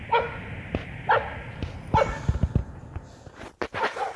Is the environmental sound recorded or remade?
recorded